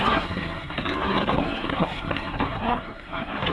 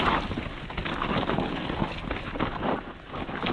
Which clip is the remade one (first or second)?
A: first